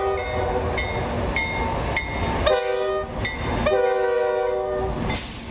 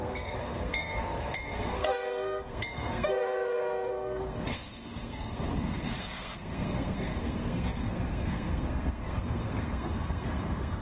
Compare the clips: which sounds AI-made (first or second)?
second